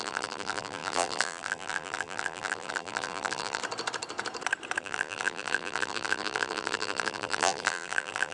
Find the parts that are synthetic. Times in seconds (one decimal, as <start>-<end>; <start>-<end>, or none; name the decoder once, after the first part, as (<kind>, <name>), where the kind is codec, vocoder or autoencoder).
0.0-3.6 (vocoder, BigVGAN v2); 4.8-8.3